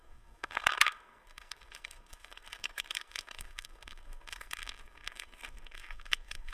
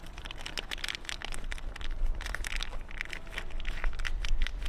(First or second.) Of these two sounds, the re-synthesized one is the first